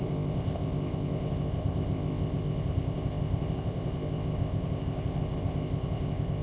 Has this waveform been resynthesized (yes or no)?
yes